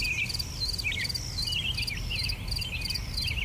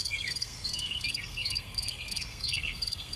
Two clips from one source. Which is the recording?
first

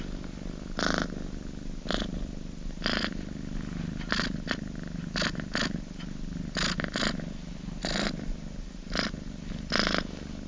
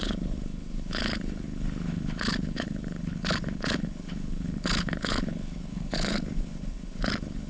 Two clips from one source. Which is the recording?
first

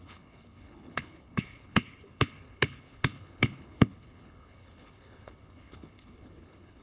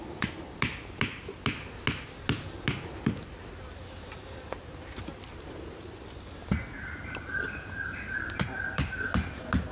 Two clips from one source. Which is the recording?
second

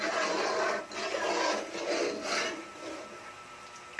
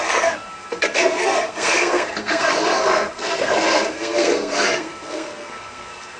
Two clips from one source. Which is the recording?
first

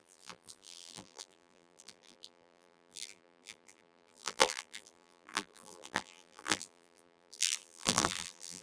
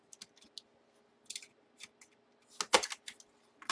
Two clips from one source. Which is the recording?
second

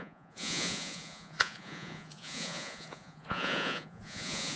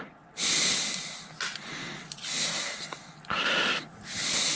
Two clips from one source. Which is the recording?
second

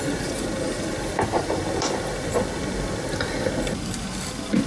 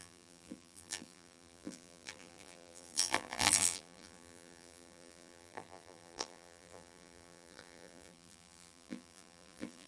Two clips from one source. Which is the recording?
first